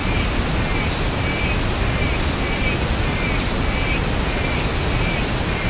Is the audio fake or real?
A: real